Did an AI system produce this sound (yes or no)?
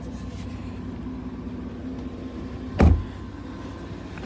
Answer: no